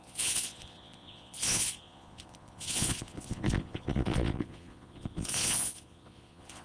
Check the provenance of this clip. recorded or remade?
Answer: remade